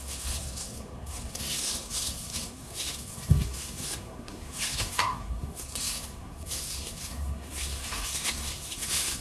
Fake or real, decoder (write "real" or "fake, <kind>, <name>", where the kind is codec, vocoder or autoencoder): fake, codec, SNAC